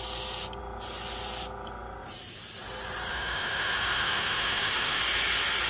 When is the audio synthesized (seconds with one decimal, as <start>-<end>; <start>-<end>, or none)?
3.1-5.0